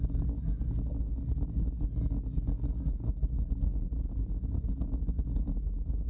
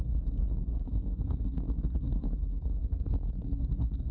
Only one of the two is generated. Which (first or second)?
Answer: second